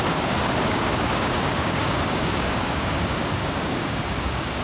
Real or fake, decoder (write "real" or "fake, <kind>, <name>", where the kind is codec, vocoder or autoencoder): fake, codec, DAC